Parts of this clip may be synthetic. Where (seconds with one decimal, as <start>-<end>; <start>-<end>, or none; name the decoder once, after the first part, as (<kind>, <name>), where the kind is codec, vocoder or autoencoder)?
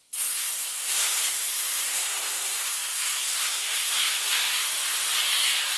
0.0-4.6 (codec, SNAC); 5.2-5.8